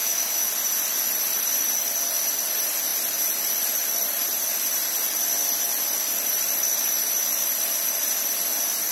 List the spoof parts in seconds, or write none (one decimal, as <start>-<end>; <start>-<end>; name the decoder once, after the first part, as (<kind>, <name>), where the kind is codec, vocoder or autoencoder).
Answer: 0.0-0.5 (autoencoder, DAC-VAE)